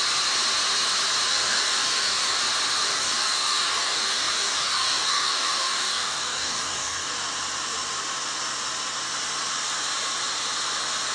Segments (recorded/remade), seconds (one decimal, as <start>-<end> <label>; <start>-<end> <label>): 0.0-1.3 recorded; 1.3-2.4 remade; 2.4-2.8 recorded; 2.8-7.1 remade; 7.1-11.1 recorded